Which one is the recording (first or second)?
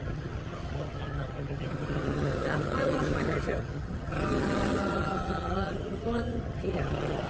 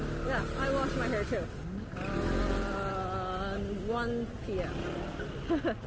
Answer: second